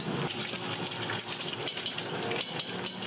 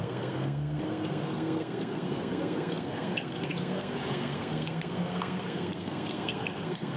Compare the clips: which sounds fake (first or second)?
second